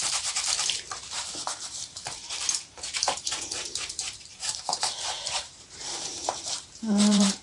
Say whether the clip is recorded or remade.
remade